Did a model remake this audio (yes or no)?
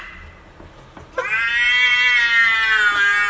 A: no